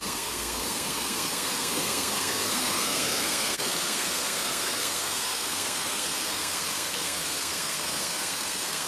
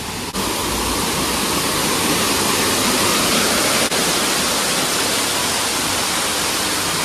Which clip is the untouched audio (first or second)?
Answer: second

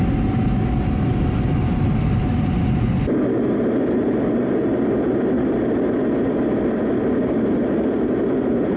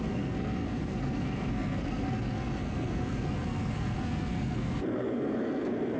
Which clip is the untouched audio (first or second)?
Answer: first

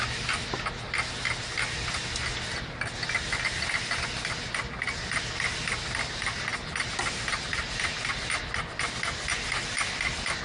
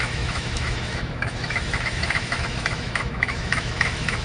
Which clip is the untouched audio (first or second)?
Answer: first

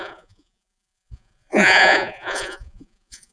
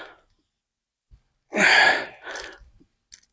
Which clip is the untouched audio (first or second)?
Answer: second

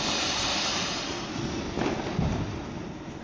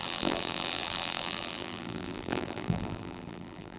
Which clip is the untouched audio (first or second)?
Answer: first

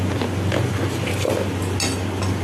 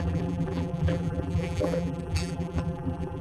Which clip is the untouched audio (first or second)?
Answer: first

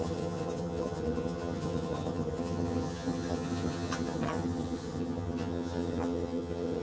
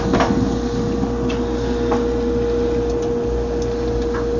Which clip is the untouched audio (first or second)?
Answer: second